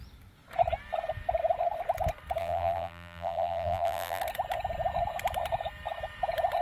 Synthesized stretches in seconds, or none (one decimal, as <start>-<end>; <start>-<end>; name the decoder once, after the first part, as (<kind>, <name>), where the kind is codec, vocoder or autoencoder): 2.4-4.2 (vocoder, BigVGAN v2)